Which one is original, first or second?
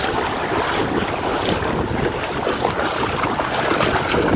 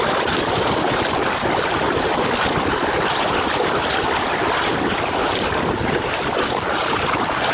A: first